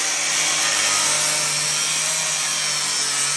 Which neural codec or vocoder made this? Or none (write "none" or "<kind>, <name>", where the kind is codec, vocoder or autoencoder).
none